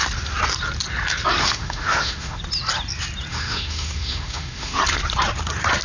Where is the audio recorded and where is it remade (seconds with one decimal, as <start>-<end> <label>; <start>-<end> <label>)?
0.0-1.4 recorded; 1.4-2.4 remade; 2.4-3.3 recorded; 3.3-4.8 remade; 4.8-5.8 recorded